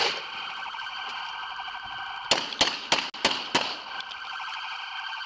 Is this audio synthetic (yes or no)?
no